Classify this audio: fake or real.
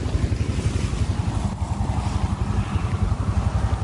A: real